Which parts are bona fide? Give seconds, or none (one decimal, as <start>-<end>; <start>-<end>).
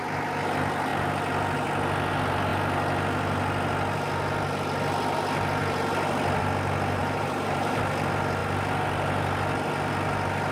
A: 0.0-7.0; 7.8-10.5